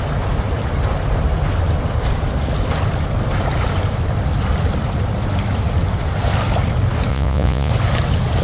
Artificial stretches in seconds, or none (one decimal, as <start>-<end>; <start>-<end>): 7.1-7.7